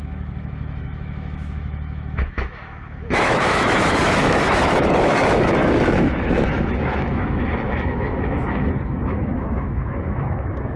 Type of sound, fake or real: fake